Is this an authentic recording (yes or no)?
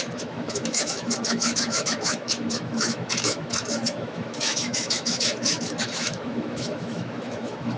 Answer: no